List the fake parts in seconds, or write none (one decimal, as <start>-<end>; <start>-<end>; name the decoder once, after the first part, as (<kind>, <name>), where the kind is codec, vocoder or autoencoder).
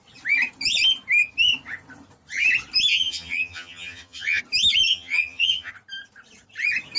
2.9-4.4 (vocoder, HiFi-GAN); 4.9-5.7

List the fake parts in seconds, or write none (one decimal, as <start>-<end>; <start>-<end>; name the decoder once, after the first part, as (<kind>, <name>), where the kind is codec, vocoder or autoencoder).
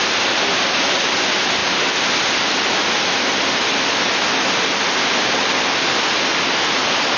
none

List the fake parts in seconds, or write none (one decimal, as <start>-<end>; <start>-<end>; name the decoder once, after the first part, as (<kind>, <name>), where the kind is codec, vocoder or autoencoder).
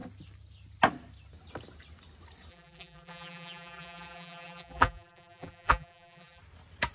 2.5-6.4 (vocoder, BigVGAN v2)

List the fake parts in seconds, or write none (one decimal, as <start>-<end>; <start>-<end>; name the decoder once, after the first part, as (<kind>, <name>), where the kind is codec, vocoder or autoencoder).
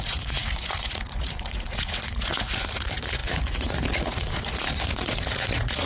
0.0-5.9 (vocoder, Vocos)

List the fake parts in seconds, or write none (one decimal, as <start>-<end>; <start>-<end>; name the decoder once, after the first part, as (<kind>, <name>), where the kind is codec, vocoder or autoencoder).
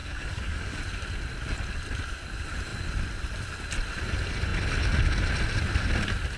0.0-0.8 (codec, DAC)